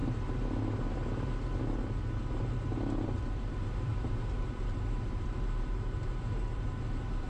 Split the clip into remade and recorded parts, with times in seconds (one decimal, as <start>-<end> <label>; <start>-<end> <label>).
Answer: 0.0-3.4 recorded; 3.4-7.3 remade